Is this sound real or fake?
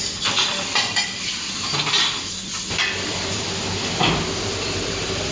fake